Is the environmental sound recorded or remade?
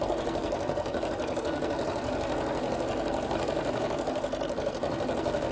remade